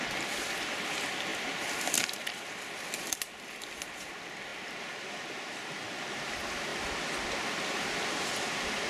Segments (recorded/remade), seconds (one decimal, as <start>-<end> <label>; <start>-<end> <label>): 0.0-1.3 recorded; 1.3-2.3 remade; 2.3-4.5 recorded; 4.5-6.0 remade; 6.0-8.9 recorded